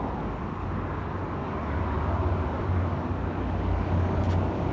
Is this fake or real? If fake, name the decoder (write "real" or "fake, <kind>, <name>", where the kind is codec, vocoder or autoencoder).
fake, codec, DAC